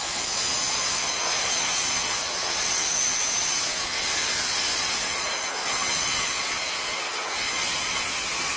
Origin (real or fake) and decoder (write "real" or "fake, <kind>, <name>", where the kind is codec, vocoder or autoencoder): fake, vocoder, Vocos